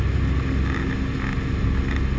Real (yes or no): yes